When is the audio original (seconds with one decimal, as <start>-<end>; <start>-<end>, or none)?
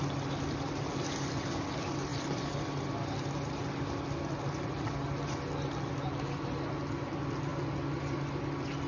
0.0-8.9